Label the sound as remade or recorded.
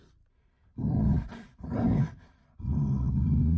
recorded